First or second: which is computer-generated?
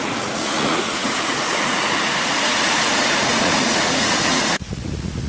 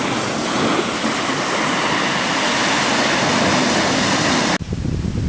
first